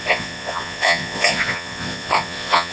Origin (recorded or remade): remade